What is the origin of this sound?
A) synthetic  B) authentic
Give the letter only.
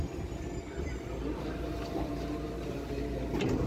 B